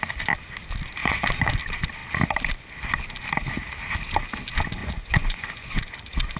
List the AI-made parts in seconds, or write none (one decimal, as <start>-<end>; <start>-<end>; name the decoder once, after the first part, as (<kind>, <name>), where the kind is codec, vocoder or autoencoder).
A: 1.0-1.6 (vocoder, Vocos); 4.8-5.8